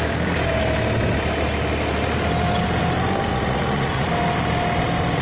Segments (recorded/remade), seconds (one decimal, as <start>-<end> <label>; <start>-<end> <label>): 0.0-3.3 recorded; 3.3-4.1 remade; 4.1-5.2 recorded